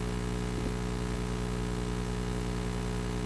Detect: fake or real real